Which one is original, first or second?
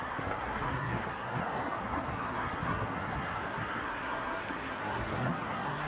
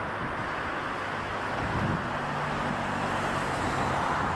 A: second